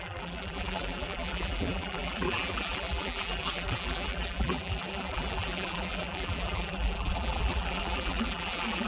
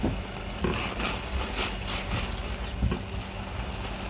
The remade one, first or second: first